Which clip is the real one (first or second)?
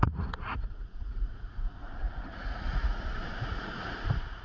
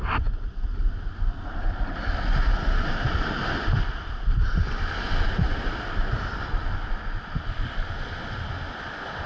second